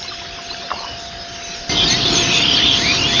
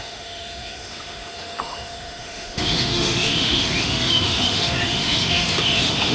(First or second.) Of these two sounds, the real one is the first